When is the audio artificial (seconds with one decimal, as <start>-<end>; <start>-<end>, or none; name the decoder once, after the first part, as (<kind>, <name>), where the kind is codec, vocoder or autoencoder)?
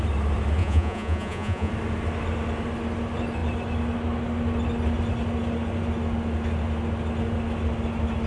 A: 0.6-1.7 (vocoder, Vocos)